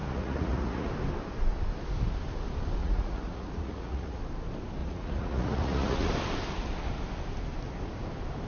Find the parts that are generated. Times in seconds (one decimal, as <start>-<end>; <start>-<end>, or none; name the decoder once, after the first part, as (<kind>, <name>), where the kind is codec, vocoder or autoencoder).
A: 0.0-0.9 (vocoder, Vocos); 2.8-4.2; 4.8-6.1